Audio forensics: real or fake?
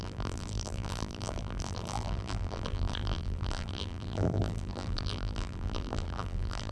fake